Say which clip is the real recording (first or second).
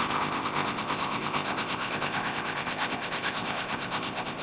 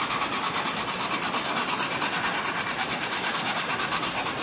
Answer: second